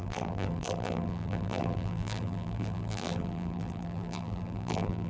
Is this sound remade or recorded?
remade